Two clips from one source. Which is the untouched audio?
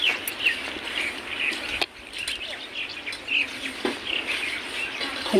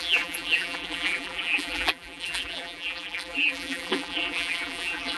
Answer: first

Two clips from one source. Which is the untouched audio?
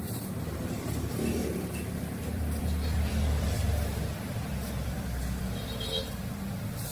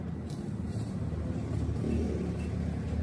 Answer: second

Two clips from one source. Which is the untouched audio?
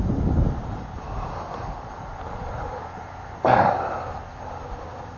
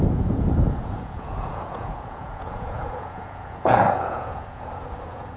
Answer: first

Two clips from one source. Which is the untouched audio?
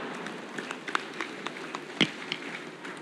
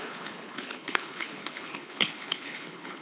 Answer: first